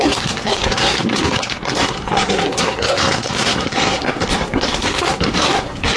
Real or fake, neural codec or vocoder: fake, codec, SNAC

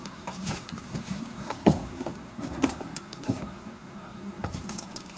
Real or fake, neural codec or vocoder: fake, codec, SNAC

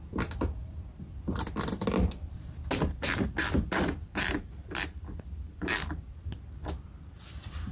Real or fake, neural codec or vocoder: real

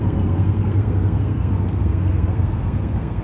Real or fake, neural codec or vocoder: fake, codec, SNAC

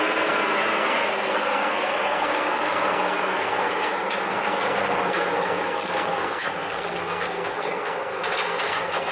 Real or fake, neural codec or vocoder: fake, codec, SNAC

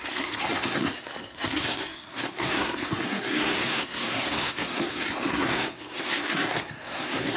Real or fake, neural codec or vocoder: fake, codec, SNAC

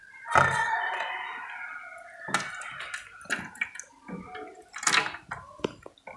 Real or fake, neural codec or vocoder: real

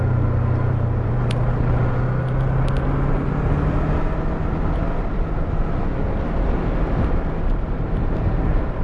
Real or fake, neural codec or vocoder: real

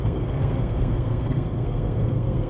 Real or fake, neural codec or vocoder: fake, codec, SNAC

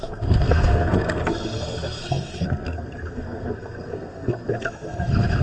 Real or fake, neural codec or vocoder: fake, codec, SNAC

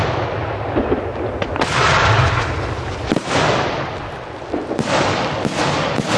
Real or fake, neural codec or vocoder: real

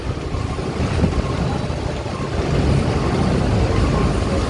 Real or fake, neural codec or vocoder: real